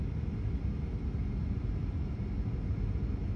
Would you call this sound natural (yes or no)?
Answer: yes